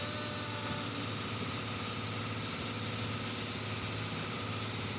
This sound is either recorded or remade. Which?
recorded